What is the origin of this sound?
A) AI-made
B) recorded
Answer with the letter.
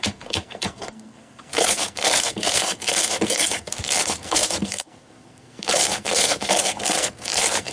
A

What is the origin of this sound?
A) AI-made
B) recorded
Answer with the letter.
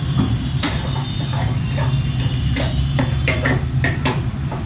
A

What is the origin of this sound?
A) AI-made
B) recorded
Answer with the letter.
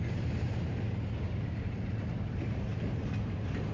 A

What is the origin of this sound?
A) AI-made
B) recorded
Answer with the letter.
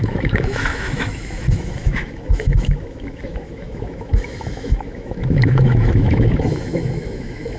A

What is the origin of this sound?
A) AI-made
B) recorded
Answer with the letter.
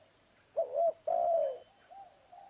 B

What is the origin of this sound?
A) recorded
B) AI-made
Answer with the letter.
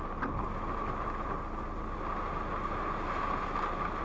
A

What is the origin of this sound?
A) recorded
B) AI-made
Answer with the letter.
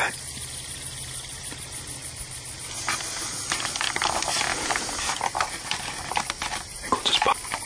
A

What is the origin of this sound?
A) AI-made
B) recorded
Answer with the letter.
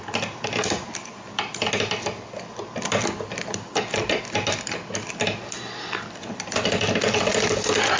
B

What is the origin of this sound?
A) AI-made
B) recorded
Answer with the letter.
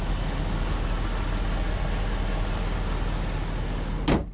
B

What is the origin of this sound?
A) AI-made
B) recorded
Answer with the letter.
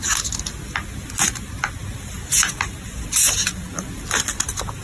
B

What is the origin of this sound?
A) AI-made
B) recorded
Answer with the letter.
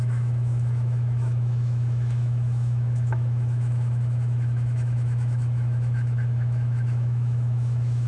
A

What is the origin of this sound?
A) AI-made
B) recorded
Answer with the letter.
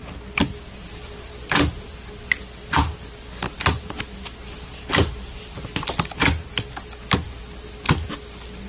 B